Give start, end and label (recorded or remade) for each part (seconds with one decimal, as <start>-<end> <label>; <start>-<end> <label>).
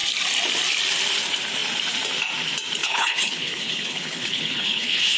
0.0-2.8 recorded; 2.8-5.2 remade